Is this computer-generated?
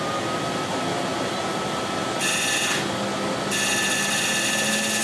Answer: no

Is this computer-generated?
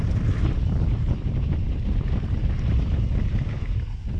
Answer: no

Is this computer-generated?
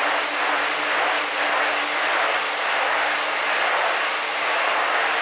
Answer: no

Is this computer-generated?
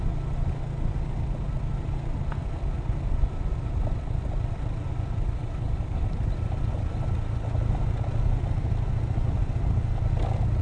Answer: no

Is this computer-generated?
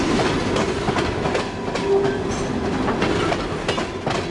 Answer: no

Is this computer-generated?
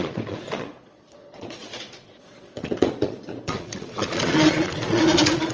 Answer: yes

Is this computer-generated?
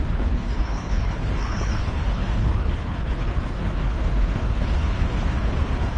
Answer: yes